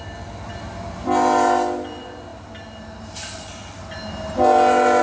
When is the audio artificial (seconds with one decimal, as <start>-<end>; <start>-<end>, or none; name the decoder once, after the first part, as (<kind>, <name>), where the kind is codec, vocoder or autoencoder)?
none